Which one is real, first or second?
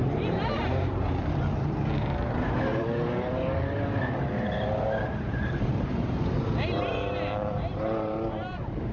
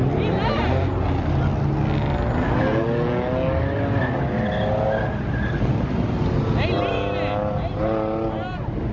second